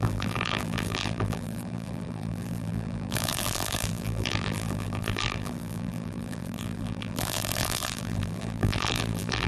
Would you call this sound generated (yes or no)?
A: yes